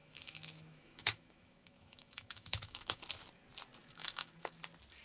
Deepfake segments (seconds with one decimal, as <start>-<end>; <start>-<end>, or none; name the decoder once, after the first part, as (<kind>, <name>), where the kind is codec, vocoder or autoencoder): 0.0-3.0 (autoencoder, DAC-VAE); 3.8-4.6